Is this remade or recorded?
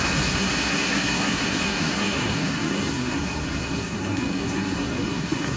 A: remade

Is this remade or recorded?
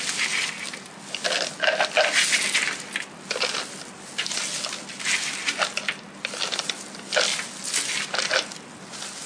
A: recorded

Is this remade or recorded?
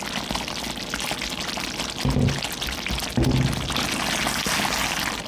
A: recorded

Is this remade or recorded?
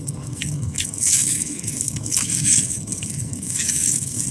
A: remade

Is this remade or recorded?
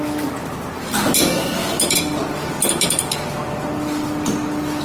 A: recorded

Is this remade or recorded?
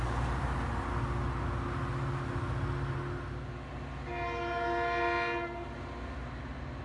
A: recorded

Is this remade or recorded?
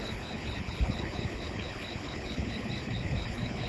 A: remade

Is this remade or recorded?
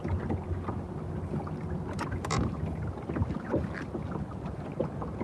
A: recorded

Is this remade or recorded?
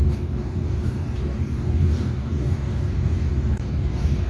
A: remade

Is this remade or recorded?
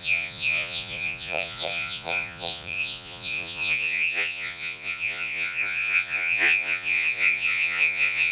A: remade